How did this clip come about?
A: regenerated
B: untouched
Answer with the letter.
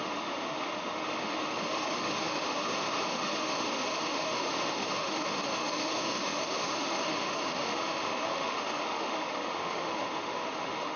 A